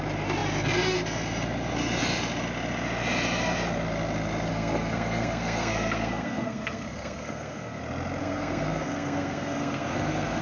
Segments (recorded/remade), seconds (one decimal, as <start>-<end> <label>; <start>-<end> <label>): 0.0-4.5 recorded; 4.5-7.8 remade; 7.8-8.2 recorded; 8.2-10.4 remade